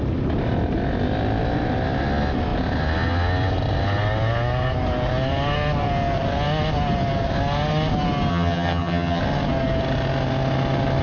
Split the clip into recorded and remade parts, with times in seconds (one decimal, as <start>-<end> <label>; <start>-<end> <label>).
0.0-8.3 recorded; 8.3-9.2 remade; 9.2-11.0 recorded